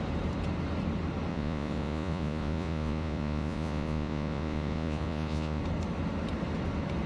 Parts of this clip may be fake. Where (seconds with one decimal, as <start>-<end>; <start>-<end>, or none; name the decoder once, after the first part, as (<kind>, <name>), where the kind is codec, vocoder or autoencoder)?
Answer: 1.3-5.6 (vocoder, Vocos)